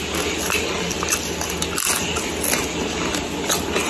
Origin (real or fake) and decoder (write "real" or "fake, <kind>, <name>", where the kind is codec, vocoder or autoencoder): real